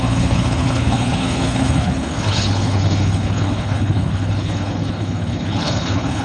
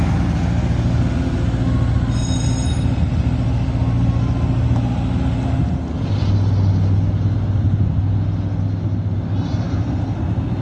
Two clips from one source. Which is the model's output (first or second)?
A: first